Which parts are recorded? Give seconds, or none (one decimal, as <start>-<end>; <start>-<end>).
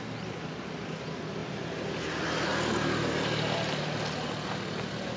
0.0-5.2